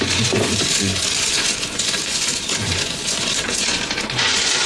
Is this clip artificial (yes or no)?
yes